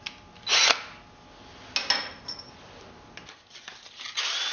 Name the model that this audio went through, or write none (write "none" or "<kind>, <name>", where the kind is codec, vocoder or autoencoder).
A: none